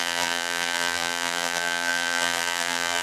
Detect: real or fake fake